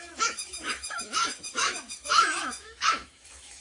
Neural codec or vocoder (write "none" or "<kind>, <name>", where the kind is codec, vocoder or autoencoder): autoencoder, DAC-VAE